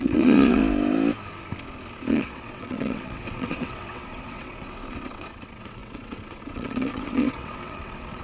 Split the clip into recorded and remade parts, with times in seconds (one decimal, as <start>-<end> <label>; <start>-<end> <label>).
0.0-0.6 remade; 0.6-2.1 recorded; 2.1-8.2 remade